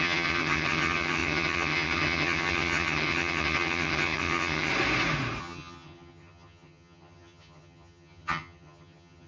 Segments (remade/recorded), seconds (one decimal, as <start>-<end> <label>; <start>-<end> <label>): 0.0-4.7 remade; 4.7-5.4 recorded; 5.4-9.3 remade